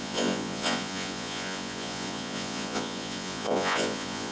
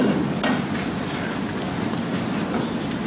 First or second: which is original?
second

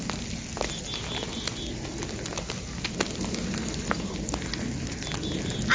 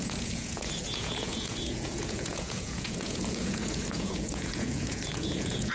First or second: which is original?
first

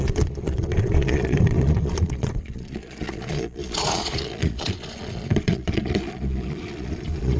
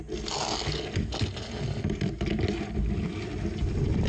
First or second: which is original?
second